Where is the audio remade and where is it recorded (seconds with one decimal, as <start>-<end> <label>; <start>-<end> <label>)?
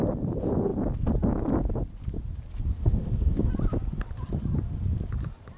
0.0-2.8 recorded; 2.8-3.5 remade; 3.5-5.6 recorded